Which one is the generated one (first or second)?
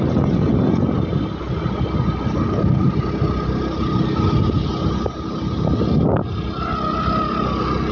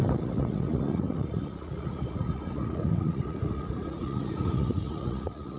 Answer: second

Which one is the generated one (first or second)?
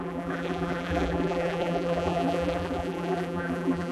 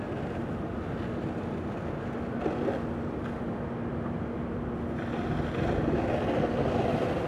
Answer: first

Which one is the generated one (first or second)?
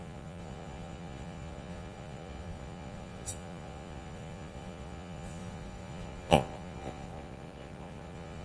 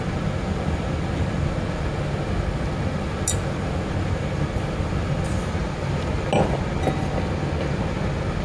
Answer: first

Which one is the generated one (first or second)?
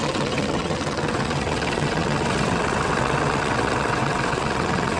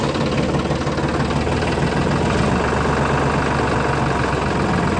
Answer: first